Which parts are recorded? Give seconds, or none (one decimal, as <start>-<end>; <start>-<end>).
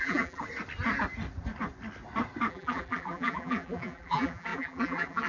0.4-2.5